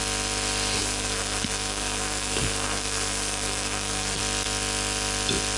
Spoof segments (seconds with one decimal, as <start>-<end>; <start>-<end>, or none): 0.8-4.2